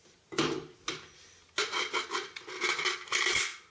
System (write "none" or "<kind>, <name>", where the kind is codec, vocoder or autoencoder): none